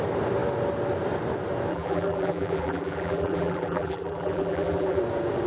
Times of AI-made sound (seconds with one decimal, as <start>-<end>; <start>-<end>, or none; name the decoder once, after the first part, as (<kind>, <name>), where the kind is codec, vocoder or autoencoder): 1.7-5.0 (vocoder, BigVGAN v2)